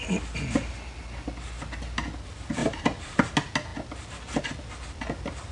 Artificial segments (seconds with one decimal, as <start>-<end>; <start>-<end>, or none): 2.6-3.2